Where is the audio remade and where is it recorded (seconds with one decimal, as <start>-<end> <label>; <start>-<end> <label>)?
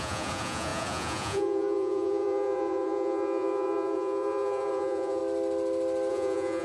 0.0-5.2 remade; 5.2-6.1 recorded; 6.1-6.6 remade